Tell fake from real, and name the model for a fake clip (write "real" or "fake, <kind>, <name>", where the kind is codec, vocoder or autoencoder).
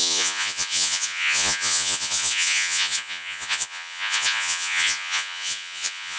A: fake, vocoder, Vocos